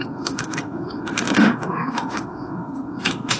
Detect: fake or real fake